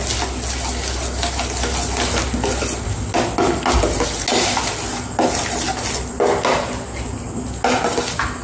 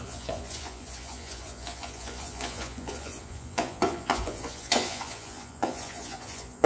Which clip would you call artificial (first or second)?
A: second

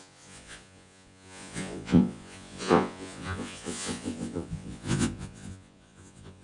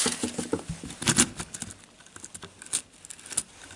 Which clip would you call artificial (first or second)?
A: first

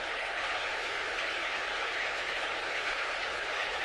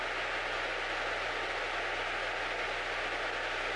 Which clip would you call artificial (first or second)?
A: first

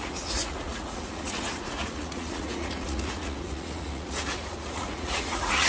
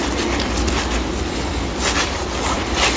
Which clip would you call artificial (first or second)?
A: first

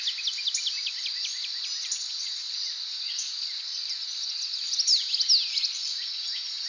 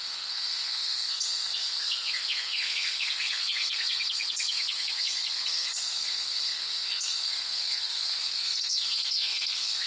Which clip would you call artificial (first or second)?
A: second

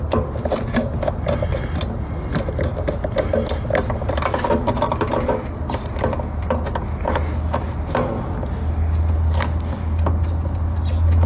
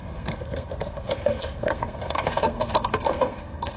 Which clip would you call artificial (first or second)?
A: second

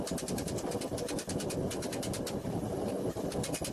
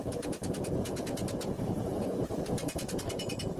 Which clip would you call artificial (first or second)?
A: second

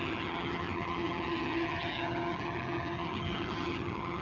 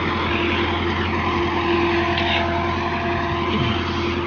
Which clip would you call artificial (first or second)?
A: first